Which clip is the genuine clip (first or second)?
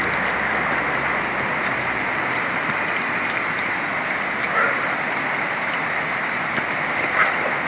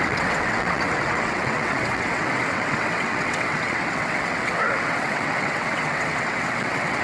first